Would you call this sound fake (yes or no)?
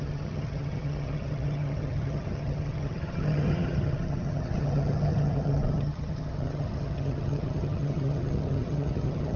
yes